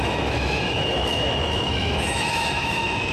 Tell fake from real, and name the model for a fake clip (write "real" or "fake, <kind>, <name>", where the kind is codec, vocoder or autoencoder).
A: fake, autoencoder, DAC-VAE